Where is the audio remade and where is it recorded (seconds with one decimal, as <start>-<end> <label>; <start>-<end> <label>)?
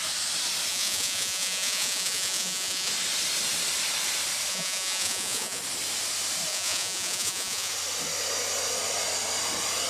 0.0-0.7 recorded; 0.7-2.9 remade; 2.9-4.5 recorded; 4.5-5.6 remade; 5.6-6.5 recorded; 6.5-7.7 remade; 7.7-9.9 recorded